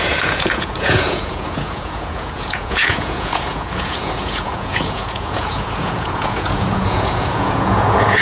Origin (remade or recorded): remade